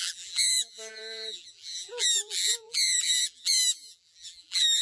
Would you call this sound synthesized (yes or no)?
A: yes